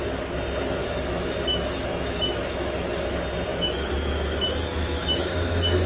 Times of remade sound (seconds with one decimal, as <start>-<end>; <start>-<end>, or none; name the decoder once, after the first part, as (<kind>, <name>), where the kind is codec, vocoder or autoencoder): 0.8-3.1 (autoencoder, DAC-VAE); 3.5-5.9